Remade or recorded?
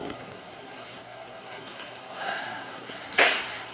remade